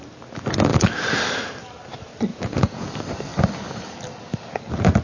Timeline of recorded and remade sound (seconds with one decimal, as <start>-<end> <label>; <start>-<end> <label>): 0.0-2.3 recorded; 2.3-2.9 remade; 2.9-5.0 recorded